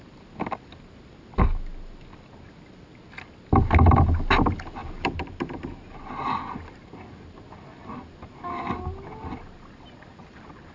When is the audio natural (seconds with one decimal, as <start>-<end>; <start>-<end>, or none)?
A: 0.0-4.8; 6.0-10.7

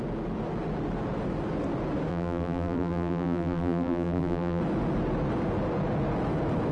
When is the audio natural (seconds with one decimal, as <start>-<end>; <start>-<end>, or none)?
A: 0.0-2.1; 4.6-6.7

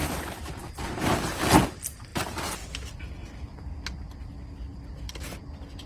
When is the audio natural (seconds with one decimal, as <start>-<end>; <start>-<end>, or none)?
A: 1.4-5.9

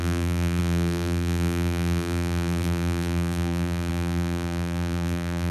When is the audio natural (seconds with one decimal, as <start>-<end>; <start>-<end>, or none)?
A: none

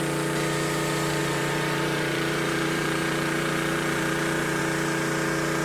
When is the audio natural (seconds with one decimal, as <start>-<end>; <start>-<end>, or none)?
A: 0.0-1.2; 4.6-5.6

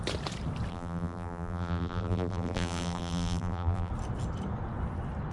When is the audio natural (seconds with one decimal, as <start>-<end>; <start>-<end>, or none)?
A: 0.0-0.7; 3.9-5.3

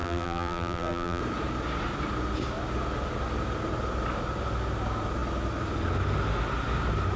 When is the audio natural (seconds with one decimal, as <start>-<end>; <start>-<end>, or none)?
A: 1.2-7.2